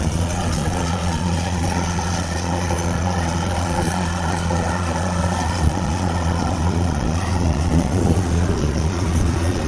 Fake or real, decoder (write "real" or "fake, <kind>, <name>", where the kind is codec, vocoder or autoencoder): fake, vocoder, Vocos